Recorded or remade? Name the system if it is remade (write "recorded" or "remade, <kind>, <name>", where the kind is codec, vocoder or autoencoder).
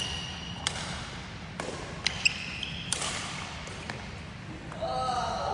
recorded